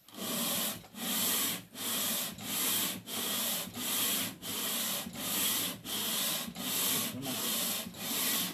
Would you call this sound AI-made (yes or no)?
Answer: no